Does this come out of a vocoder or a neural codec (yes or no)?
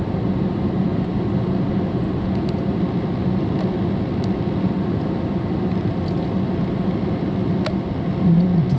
no